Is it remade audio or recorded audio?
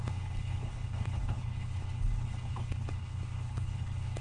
remade